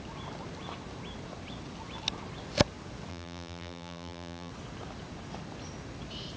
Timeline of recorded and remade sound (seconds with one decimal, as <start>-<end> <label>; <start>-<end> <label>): 0.0-3.1 recorded; 3.1-4.5 remade; 4.5-6.4 recorded